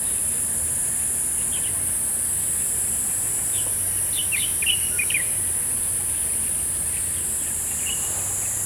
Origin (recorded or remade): recorded